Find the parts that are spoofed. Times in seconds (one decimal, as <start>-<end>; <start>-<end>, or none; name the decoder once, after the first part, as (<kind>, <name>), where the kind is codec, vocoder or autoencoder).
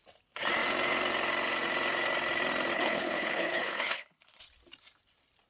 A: 2.7-4.4 (codec, HILCodec)